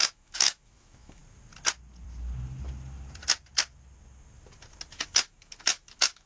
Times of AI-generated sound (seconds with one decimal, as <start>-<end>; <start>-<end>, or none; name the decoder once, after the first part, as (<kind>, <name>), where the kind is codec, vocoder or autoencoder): 0.0-1.2 (autoencoder, DAC-VAE); 5.0-6.3